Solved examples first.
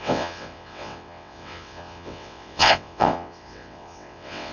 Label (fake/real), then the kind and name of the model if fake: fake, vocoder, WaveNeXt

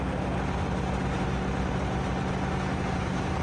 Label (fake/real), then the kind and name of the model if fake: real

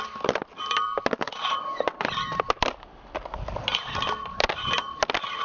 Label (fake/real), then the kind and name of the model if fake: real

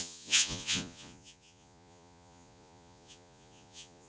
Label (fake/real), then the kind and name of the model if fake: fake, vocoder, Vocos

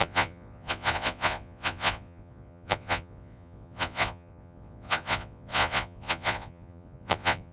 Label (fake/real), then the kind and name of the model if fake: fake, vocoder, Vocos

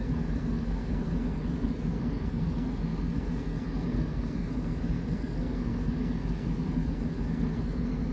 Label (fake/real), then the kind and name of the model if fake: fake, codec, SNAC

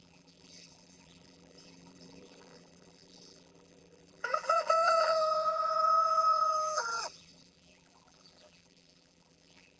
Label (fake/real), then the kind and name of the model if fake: fake, vocoder, BigVGAN v2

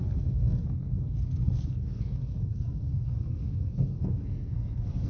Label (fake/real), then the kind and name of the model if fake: fake, codec, SNAC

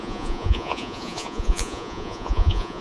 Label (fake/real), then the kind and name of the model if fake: fake, vocoder, Vocos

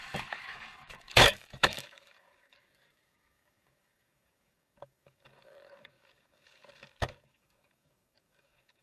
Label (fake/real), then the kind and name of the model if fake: fake, codec, DAC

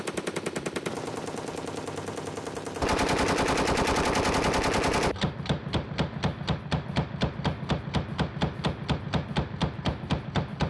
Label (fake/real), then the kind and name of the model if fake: real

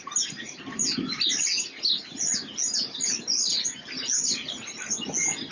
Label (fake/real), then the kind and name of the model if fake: real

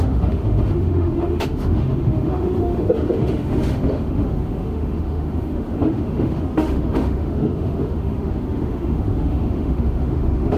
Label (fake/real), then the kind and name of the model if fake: fake, autoencoder, DAC-VAE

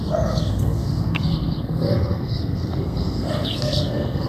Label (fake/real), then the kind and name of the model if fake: fake, codec, SNAC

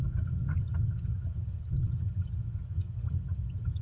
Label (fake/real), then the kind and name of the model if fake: fake, vocoder, HiFi-GAN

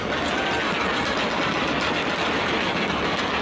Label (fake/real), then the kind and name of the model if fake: real